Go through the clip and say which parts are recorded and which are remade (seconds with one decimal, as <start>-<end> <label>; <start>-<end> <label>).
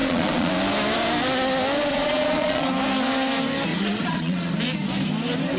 0.0-0.5 remade; 0.5-1.9 recorded; 1.9-2.7 remade; 2.7-3.7 recorded; 3.7-4.5 remade; 4.5-5.6 recorded